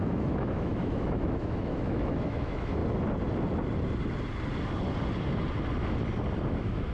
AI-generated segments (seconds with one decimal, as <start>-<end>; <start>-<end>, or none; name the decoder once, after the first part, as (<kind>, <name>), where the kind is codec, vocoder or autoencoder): 0.0-2.8 (autoencoder, DAC-VAE); 6.5-6.9